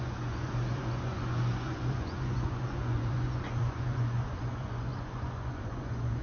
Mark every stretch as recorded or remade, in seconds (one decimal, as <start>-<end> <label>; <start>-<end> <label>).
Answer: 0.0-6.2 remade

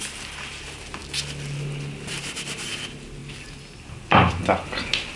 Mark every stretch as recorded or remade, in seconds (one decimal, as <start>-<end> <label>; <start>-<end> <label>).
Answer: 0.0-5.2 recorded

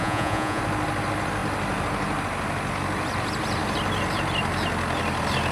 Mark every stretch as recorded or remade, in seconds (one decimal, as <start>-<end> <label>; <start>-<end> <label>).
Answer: 0.0-0.6 remade; 0.6-5.5 recorded